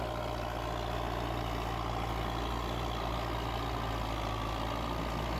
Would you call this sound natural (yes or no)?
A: yes